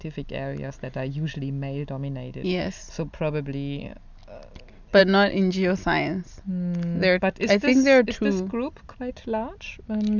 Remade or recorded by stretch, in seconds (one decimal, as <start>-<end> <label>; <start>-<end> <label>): 0.0-2.3 recorded; 2.3-2.8 remade; 2.8-10.2 recorded